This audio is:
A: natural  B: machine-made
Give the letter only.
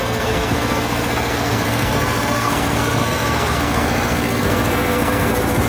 B